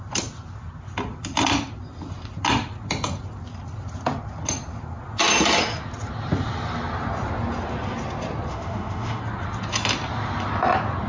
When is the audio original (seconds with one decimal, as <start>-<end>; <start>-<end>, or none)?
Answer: 0.0-8.5; 9.2-11.1